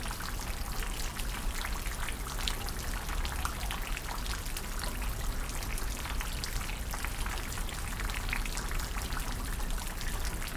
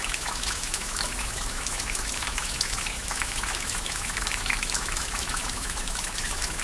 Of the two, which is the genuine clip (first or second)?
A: first